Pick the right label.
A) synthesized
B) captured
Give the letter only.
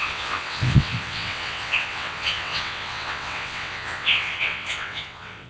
A